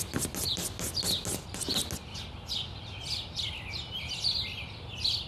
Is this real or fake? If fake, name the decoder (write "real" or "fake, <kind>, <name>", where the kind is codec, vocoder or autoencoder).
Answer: real